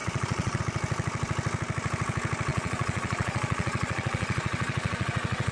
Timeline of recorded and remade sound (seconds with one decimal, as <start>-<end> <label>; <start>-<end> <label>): 0.0-0.6 remade; 0.6-2.5 recorded; 2.5-5.5 remade